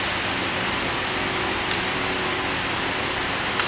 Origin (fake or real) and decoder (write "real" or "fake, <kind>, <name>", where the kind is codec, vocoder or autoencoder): real